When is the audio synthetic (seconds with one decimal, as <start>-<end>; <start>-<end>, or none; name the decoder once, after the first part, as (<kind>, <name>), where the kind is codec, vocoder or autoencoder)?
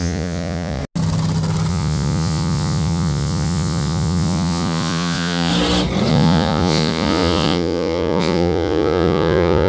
0.0-0.8 (vocoder, Vocos); 1.7-5.5; 6.1-9.7